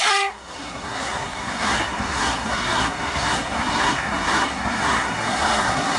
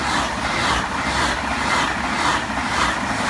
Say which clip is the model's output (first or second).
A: first